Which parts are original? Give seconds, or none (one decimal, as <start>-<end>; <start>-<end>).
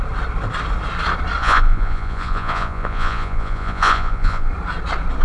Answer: 0.0-1.4; 4.5-5.2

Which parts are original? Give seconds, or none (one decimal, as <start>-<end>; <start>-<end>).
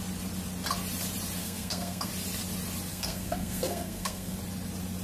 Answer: 0.0-1.4; 2.1-2.9; 4.4-5.0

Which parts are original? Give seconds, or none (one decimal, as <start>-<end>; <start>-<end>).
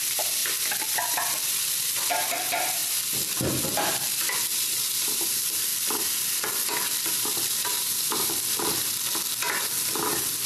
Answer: 0.4-2.1; 2.8-3.5